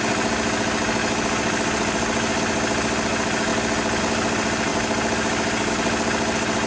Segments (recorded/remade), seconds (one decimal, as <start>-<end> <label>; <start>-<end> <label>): 0.0-6.7 recorded